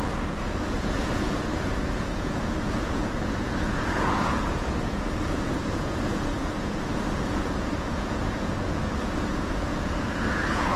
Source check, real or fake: fake